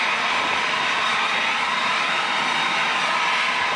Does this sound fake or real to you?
real